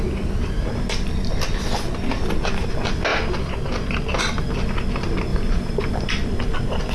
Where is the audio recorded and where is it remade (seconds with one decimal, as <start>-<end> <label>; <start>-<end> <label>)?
0.0-5.3 recorded; 5.3-6.1 remade; 6.1-6.9 recorded